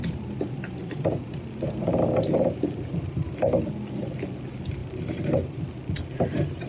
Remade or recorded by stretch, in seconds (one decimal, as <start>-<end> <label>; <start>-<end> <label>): 0.0-2.9 remade; 2.9-4.8 recorded; 4.8-5.6 remade; 5.6-6.7 recorded